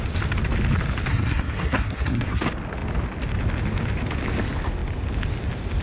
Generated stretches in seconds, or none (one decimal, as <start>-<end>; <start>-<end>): 1.1-2.4